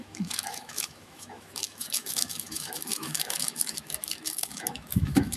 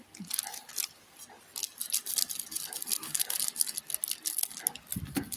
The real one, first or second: second